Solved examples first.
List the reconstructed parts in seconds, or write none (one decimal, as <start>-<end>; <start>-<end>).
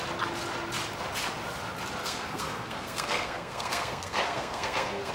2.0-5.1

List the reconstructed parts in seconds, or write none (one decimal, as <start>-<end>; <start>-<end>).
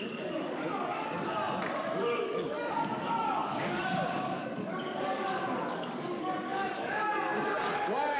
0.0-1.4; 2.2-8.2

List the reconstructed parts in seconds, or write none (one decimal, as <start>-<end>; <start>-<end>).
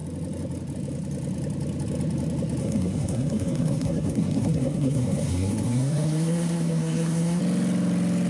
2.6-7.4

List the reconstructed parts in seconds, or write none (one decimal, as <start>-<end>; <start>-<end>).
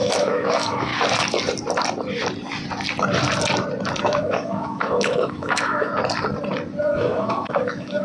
0.0-0.9; 4.0-5.9; 6.8-8.0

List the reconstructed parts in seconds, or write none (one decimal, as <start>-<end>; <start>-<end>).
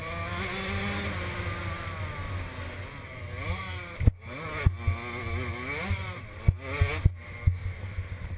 none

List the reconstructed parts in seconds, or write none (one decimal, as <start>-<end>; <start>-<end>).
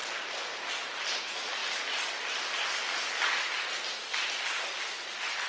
none